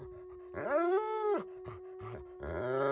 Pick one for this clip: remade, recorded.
recorded